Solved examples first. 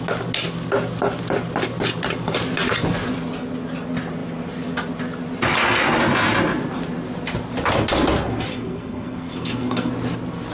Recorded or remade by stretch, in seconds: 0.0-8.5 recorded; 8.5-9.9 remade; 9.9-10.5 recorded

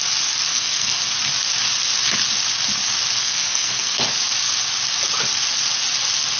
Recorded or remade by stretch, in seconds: 0.0-0.5 recorded; 0.5-1.0 remade; 1.0-3.2 recorded; 3.2-4.0 remade; 4.0-6.4 recorded

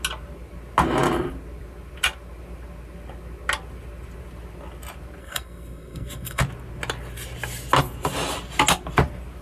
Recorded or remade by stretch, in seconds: 0.0-5.2 recorded; 5.2-6.4 remade; 6.4-9.4 recorded

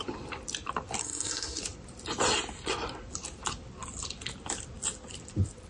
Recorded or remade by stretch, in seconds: 0.0-1.0 recorded; 1.0-1.6 remade; 1.6-5.7 recorded

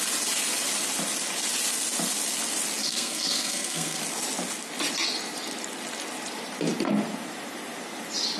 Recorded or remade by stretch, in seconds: 0.0-2.8 recorded; 2.8-4.0 remade; 4.0-8.4 recorded

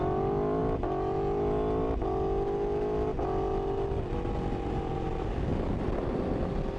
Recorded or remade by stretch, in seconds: 0.0-6.8 recorded

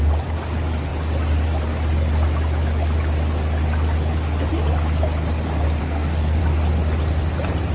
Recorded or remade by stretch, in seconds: 0.0-5.8 recorded; 5.8-6.4 remade; 6.4-7.7 recorded